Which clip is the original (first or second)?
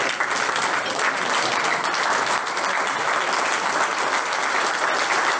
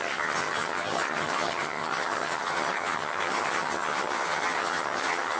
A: first